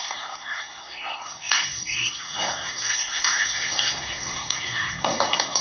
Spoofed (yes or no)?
yes